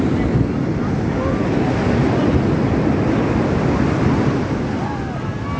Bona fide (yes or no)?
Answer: yes